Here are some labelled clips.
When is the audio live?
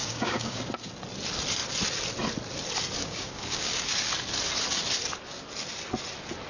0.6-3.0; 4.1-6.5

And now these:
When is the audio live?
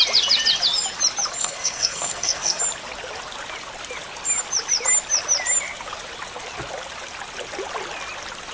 0.0-1.4; 2.6-8.5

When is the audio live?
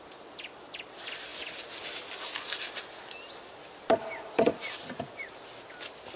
0.0-6.2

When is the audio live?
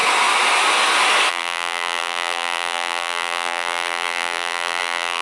0.0-1.3